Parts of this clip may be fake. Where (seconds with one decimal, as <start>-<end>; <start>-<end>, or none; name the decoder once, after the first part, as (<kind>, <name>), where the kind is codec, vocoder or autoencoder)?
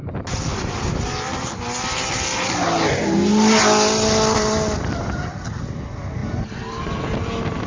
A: none